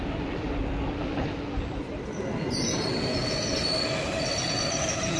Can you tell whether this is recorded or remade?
recorded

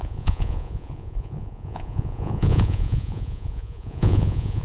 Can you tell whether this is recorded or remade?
remade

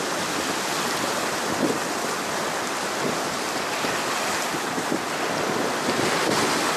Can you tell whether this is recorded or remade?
recorded